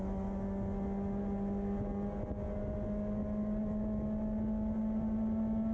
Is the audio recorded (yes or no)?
yes